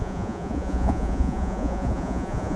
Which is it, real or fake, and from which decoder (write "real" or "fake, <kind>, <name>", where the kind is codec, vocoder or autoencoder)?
fake, vocoder, Vocos